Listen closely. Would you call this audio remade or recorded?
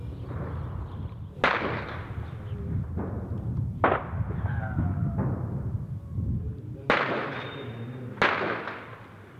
recorded